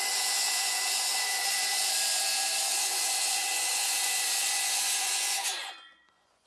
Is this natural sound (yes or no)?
no